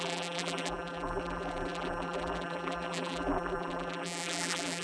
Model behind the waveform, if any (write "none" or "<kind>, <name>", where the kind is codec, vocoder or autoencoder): vocoder, BigVGAN v2